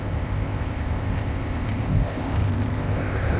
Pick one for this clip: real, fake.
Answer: fake